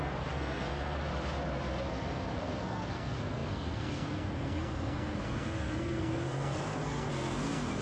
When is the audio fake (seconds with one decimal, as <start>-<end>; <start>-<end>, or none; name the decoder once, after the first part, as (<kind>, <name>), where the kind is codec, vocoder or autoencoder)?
0.0-1.1 (codec, SNAC); 1.8-7.8